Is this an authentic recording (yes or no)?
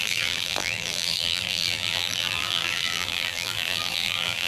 no